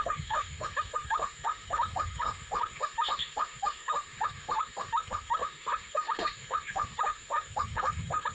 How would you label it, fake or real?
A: fake